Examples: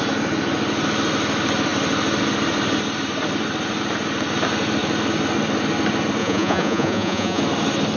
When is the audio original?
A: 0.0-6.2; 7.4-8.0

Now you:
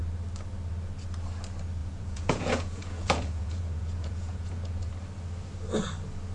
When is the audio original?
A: 0.0-1.8; 4.9-6.3